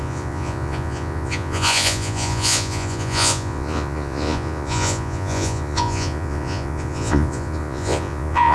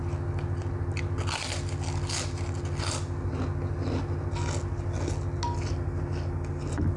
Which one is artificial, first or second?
first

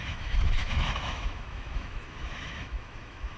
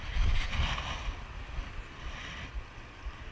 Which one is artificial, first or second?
first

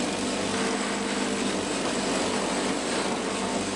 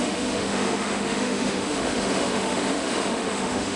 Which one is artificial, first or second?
second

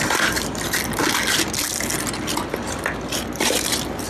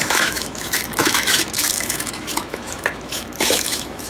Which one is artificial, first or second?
second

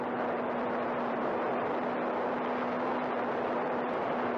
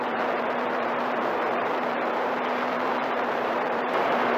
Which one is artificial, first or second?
second